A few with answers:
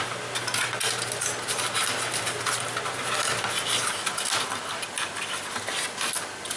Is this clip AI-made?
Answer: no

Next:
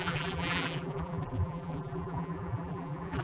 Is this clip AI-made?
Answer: yes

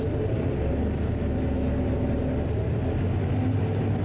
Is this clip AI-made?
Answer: no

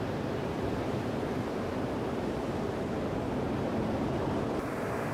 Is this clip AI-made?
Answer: yes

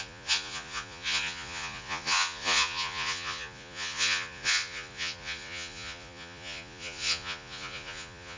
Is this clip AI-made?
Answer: yes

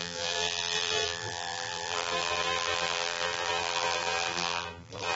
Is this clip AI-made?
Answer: yes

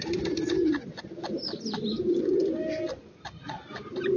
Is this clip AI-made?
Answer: no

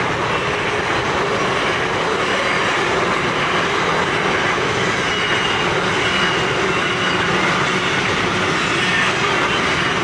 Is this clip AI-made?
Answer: no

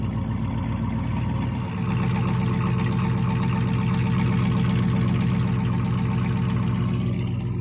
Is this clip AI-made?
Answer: no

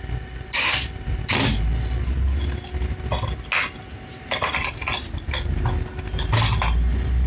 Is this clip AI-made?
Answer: no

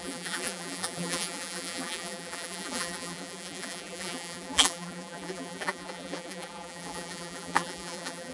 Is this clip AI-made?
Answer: yes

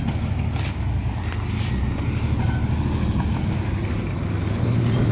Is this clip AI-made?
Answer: no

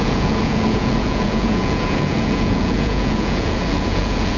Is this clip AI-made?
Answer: yes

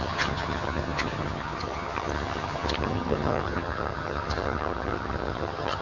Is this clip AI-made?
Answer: yes